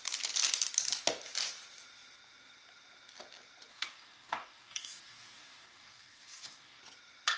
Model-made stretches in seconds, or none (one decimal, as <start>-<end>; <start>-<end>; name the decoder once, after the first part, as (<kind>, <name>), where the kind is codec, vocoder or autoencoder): 3.7-6.8 (codec, DAC)